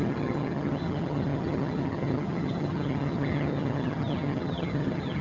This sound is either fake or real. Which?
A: fake